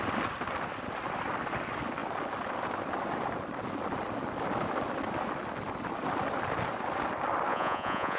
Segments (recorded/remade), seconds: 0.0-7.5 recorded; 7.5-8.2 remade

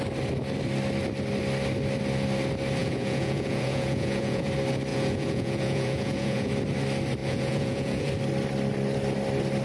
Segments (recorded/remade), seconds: 0.0-2.8 recorded; 2.8-4.5 remade; 4.5-4.9 recorded; 4.9-6.5 remade; 6.5-7.2 recorded; 7.2-8.1 remade; 8.1-9.6 recorded

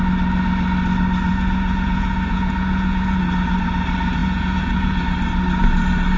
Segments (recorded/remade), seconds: 0.0-1.3 recorded; 1.3-3.2 remade; 3.2-4.2 recorded; 4.2-5.0 remade; 5.0-6.2 recorded

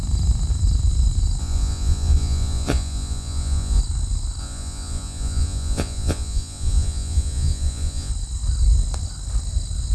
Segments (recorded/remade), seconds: 0.0-1.4 recorded; 1.4-3.8 remade; 3.8-4.4 recorded; 4.4-8.1 remade; 8.1-9.9 recorded